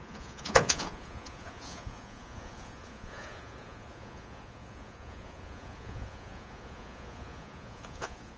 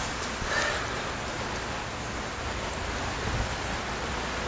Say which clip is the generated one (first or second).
first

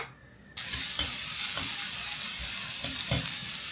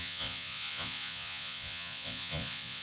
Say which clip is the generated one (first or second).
second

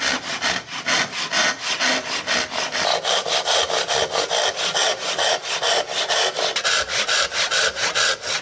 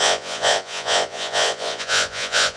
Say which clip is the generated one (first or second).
second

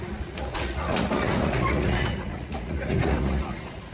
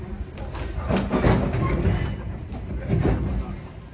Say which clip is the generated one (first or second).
first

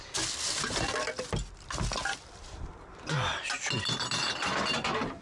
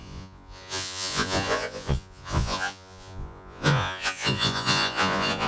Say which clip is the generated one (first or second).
second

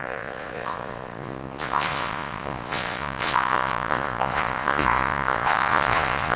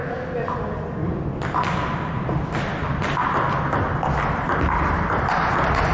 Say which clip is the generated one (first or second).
first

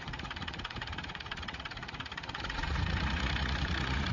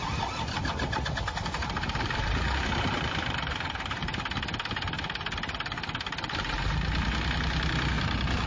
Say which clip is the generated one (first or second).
first